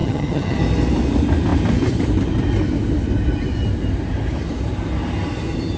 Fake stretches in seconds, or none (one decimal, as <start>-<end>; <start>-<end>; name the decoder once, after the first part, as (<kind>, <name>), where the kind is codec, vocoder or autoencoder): 0.0-0.6 (vocoder, HiFi-GAN)